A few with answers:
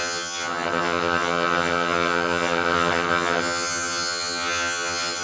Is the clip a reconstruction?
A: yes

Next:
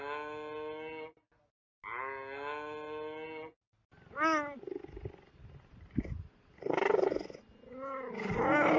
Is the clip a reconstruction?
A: no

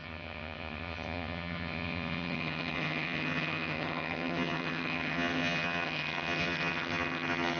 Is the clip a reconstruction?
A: yes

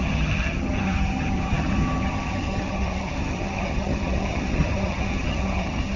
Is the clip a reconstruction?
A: yes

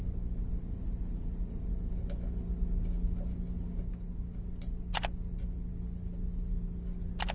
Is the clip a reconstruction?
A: no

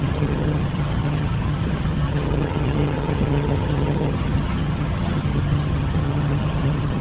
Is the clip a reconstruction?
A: yes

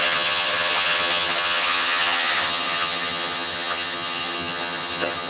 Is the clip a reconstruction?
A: yes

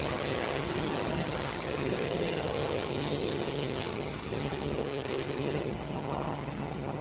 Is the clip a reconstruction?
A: yes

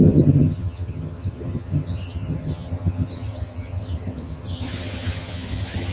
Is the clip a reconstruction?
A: yes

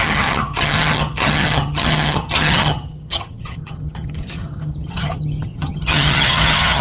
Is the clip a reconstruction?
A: yes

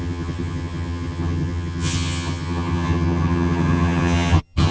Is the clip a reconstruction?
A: yes